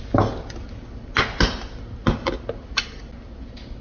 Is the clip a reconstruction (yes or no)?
no